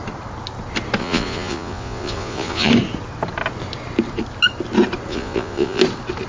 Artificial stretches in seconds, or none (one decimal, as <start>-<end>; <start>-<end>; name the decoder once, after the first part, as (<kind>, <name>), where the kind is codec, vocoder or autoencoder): 1.0-2.7 (vocoder, Vocos); 5.1-5.8